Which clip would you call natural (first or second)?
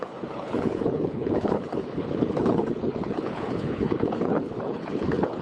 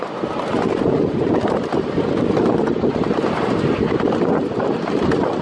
second